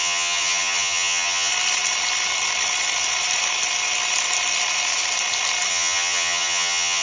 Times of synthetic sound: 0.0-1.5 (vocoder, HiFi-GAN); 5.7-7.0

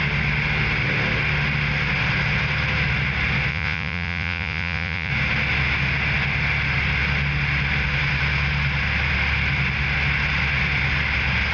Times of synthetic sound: 3.5-5.1 (vocoder, Vocos)

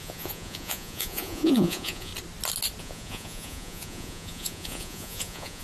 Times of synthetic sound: 0.0-2.1 (vocoder, Vocos); 2.8-5.6

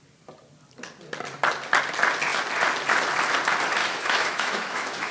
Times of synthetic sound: 3.8-5.1 (autoencoder, DAC-VAE)

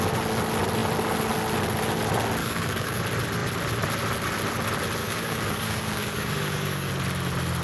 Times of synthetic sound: 2.4-3.0 (codec, DAC); 5.0-6.9

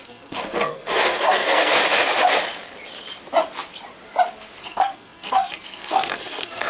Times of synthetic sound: 0.0-1.8 (codec, SNAC); 4.6-6.7